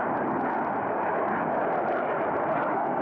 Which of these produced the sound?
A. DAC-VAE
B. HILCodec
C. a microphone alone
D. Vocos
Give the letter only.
C